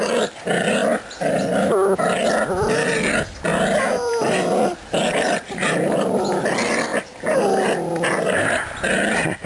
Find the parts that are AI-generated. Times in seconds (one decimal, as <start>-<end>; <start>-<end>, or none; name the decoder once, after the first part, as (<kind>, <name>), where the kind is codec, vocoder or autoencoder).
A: none